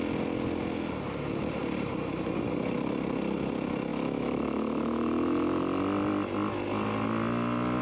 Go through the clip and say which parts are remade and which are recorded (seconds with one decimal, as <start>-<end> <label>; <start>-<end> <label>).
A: 0.0-3.9 recorded; 3.9-5.6 remade; 5.6-7.8 recorded